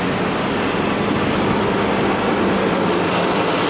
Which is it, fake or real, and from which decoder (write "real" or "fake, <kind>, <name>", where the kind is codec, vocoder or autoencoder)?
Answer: real